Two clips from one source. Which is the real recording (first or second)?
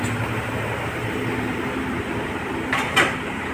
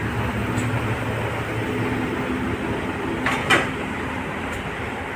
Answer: second